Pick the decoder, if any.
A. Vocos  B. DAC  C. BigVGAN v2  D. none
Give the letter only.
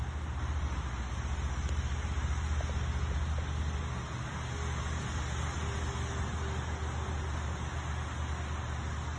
D